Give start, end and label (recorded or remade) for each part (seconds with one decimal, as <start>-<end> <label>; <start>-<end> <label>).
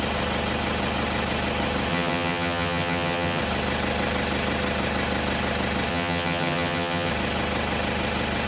0.0-1.9 recorded; 1.9-3.4 remade; 3.4-5.9 recorded; 5.9-7.1 remade; 7.1-8.5 recorded